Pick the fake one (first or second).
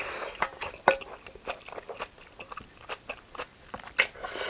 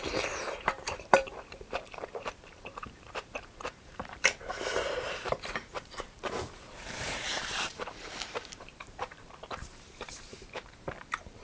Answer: second